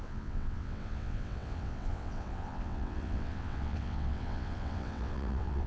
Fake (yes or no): yes